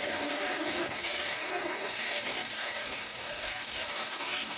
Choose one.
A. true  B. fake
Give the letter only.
B